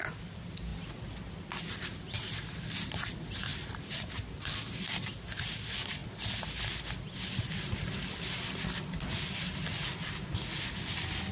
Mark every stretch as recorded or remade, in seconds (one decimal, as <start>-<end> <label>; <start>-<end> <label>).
0.0-3.5 recorded; 3.5-4.5 remade; 4.5-11.3 recorded